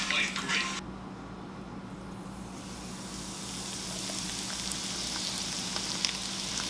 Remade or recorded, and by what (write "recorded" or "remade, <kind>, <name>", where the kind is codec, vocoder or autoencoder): recorded